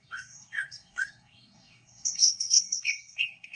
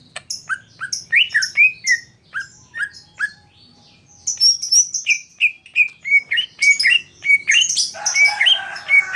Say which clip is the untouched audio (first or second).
second